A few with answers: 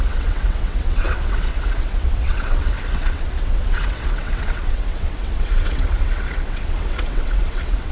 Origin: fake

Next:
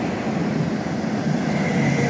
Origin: real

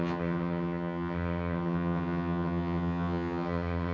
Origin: fake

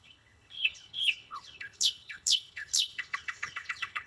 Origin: fake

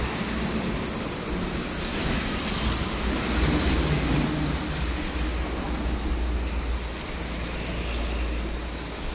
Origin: real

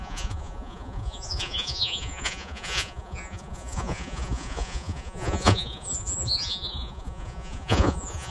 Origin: fake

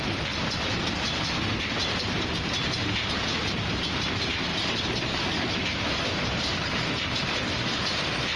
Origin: fake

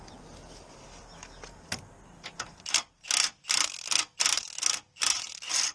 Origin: real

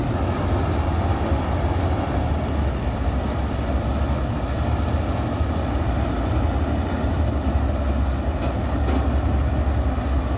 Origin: real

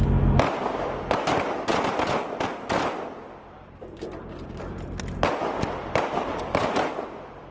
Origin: real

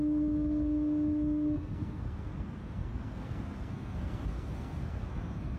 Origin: fake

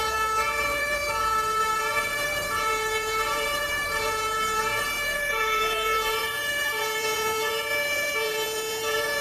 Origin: fake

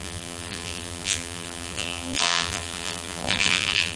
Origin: fake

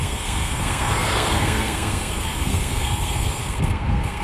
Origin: fake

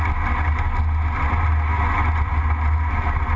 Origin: real